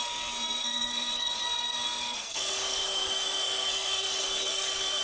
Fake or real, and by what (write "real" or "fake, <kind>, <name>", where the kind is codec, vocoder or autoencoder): fake, codec, SNAC